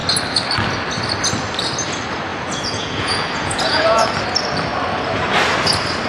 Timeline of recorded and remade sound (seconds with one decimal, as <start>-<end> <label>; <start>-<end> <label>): 0.0-2.3 recorded; 2.3-4.1 remade; 4.1-6.1 recorded